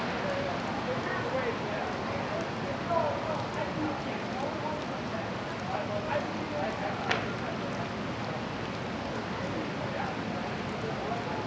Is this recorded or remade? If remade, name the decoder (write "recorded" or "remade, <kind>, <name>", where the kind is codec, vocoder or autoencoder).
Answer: recorded